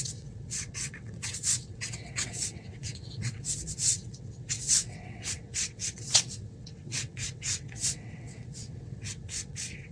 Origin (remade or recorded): remade